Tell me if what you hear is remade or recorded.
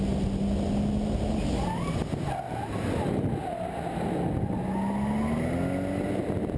recorded